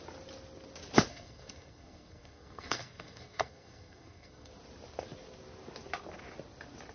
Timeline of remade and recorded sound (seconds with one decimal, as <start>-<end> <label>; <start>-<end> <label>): 0.0-1.1 recorded; 1.1-4.5 remade; 4.5-6.9 recorded